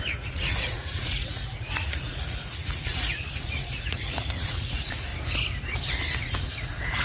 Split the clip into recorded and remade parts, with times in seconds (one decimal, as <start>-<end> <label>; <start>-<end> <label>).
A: 0.0-5.1 remade; 5.1-6.2 recorded; 6.2-7.0 remade